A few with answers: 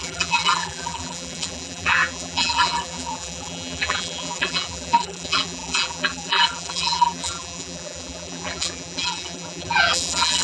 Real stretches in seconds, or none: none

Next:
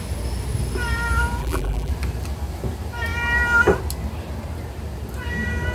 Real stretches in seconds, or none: 0.0-1.4; 1.9-5.7

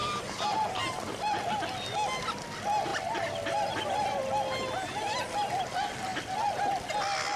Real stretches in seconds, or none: 0.9-7.4

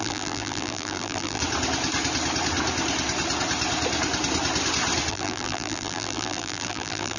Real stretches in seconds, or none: 1.4-5.1